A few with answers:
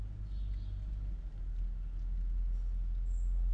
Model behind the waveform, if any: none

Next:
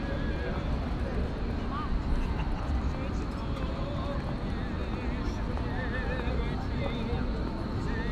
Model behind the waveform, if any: none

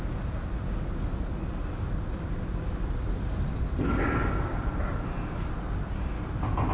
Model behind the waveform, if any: none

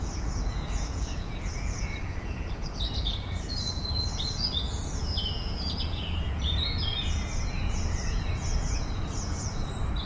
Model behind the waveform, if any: vocoder, Vocos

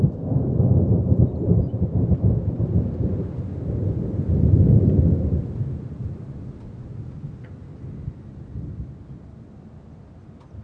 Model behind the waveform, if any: none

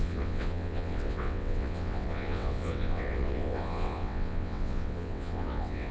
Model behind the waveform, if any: vocoder, WaveNeXt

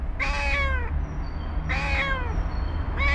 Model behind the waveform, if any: none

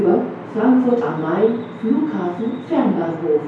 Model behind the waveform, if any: none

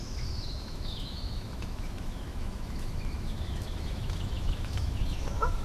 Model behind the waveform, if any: autoencoder, DAC-VAE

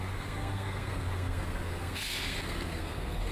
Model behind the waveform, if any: codec, SNAC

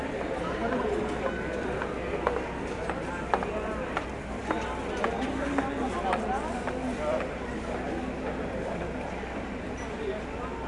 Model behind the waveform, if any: none